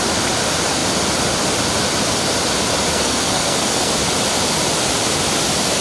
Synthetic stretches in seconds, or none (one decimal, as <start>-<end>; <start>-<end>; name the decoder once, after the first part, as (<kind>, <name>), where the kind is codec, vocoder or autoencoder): 2.9-3.9 (codec, SNAC)